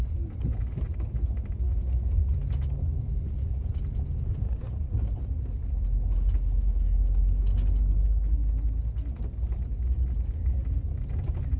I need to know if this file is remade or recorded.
recorded